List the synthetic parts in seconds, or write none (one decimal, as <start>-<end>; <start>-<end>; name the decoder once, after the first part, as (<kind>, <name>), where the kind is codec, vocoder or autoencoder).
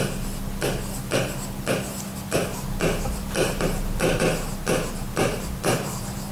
none